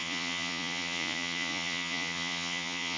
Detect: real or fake fake